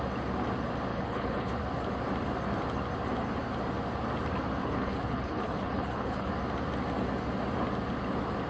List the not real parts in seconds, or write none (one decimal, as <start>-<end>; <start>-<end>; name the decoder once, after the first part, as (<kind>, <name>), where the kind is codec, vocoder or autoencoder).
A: 0.9-1.6 (codec, HILCodec); 4.6-6.3